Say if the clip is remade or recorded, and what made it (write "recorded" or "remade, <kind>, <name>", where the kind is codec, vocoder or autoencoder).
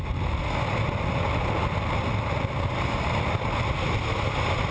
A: recorded